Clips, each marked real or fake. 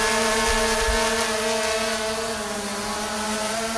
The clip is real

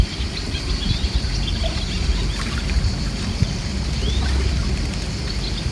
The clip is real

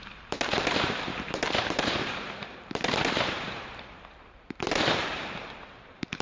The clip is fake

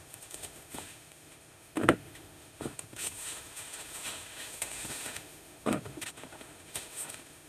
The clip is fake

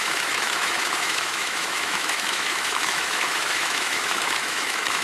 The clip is fake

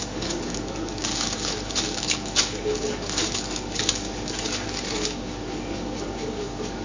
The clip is fake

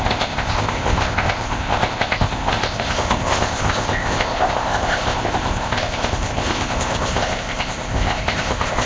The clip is fake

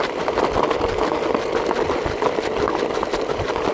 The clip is real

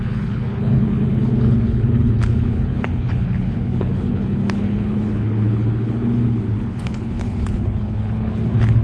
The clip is fake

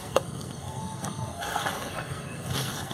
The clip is fake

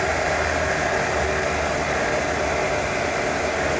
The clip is real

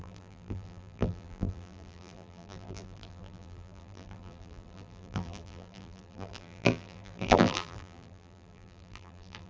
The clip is fake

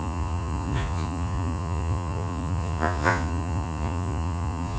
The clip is fake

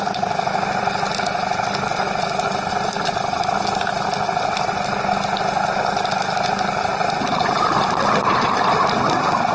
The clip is real